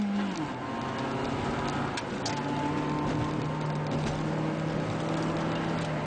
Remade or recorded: recorded